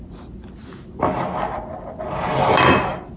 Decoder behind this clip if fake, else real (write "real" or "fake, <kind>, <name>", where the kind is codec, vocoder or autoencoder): real